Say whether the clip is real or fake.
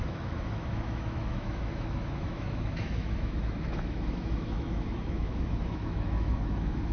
fake